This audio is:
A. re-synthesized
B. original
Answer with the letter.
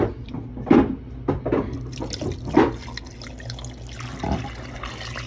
B